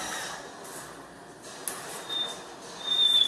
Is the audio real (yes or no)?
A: yes